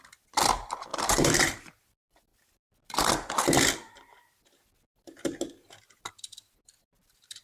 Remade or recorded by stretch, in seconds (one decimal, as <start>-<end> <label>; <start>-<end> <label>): 0.0-0.9 recorded; 0.9-1.6 remade; 1.6-7.4 recorded